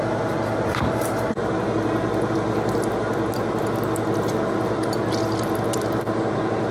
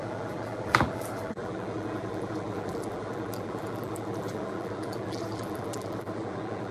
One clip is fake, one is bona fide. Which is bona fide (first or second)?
first